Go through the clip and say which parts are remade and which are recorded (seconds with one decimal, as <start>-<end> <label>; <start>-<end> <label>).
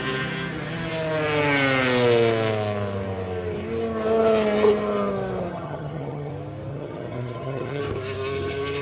0.0-5.5 recorded; 5.5-6.3 remade; 6.3-6.7 recorded; 6.7-7.8 remade; 7.8-8.8 recorded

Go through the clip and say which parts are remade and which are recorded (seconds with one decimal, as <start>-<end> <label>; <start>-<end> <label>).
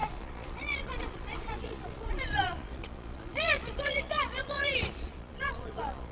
0.0-6.1 remade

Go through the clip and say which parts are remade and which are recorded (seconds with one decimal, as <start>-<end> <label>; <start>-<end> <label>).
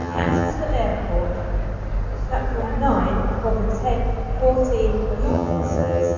0.0-0.5 remade; 0.5-5.3 recorded; 5.3-6.2 remade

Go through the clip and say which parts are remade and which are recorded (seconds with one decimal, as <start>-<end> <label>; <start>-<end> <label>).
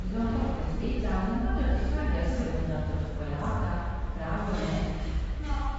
0.0-2.0 recorded; 2.0-5.8 remade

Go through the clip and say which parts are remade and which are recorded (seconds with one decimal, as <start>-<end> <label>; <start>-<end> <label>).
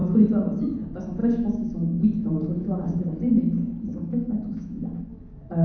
0.0-0.7 remade; 0.7-1.2 recorded; 1.2-3.0 remade; 3.0-3.9 recorded; 3.9-5.0 remade; 5.0-5.6 recorded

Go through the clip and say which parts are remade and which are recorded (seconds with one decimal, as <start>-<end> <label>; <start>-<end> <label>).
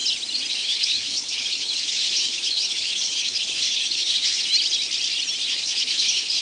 0.0-0.5 recorded; 0.5-4.5 remade; 4.5-5.5 recorded; 5.5-6.4 remade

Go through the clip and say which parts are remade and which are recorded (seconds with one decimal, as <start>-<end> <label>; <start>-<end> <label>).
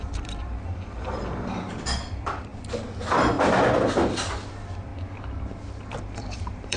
0.0-2.5 remade; 2.5-4.5 recorded; 4.5-4.9 remade; 4.9-6.0 recorded; 6.0-6.8 remade